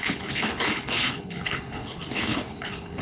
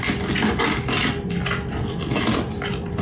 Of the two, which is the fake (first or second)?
first